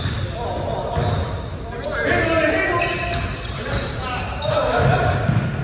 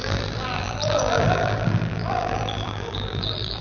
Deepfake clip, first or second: second